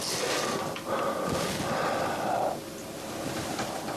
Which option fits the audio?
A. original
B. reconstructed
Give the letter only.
A